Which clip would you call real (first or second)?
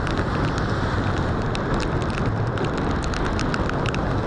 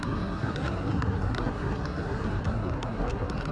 first